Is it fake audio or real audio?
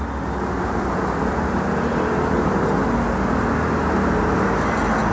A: real